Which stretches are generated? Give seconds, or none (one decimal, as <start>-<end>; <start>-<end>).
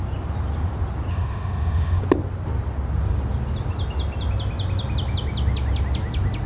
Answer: 1.1-2.0